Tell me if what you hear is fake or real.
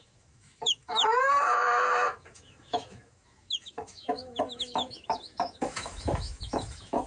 fake